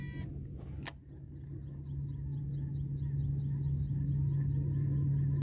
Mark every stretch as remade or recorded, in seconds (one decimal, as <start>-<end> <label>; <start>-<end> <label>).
0.0-5.4 recorded